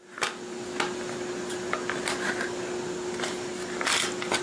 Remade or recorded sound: recorded